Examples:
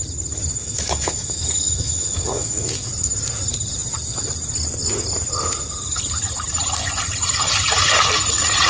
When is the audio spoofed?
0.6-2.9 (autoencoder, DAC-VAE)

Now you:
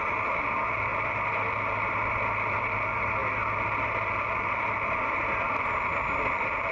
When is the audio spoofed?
none

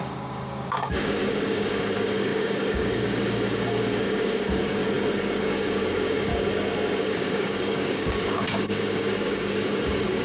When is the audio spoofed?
0.0-4.8 (codec, DAC); 5.4-6.3; 7.0-10.2

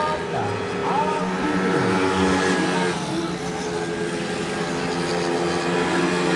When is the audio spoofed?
none